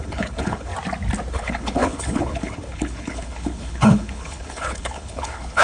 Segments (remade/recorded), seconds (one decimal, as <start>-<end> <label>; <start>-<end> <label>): 0.0-0.7 remade; 0.7-1.3 recorded; 1.3-5.6 remade